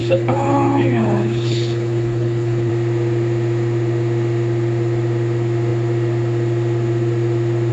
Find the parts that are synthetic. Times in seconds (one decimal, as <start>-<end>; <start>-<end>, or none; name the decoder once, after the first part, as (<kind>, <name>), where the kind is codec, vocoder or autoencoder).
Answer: 0.0-2.7 (codec, HILCodec)